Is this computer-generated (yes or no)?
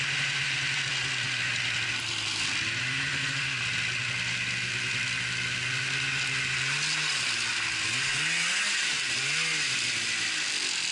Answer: no